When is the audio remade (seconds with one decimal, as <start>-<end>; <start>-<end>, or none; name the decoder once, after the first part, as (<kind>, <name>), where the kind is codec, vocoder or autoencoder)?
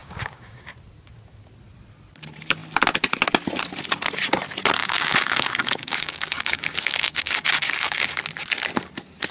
0.0-0.7 (codec, DAC); 4.8-8.2